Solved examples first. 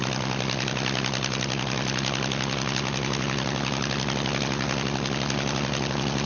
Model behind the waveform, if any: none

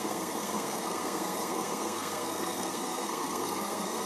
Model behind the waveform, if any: codec, SNAC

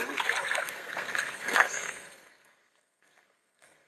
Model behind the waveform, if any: codec, SNAC